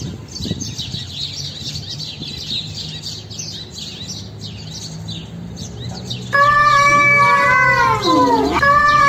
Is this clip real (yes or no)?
yes